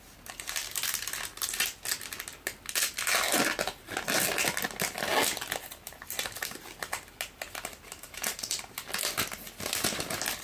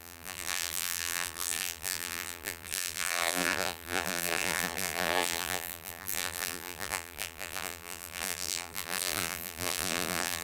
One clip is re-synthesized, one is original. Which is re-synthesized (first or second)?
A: second